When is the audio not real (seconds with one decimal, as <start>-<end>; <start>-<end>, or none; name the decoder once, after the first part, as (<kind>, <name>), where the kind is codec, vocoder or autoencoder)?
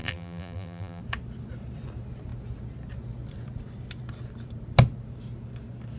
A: 0.0-1.0 (vocoder, BigVGAN v2)